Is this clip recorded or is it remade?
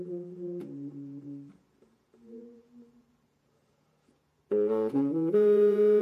remade